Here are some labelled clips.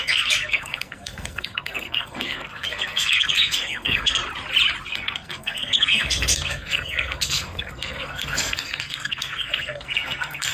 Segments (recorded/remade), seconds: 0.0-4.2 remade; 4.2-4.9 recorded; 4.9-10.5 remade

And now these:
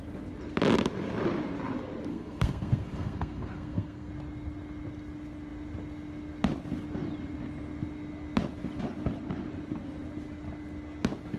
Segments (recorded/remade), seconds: 0.0-2.1 recorded; 2.1-4.1 remade; 4.1-11.4 recorded

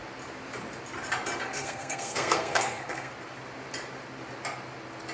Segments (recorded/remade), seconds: 0.0-1.5 recorded; 1.5-3.1 remade; 3.1-5.1 recorded